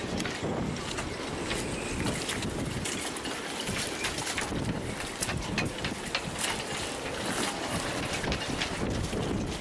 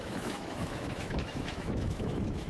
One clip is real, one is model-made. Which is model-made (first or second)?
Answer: second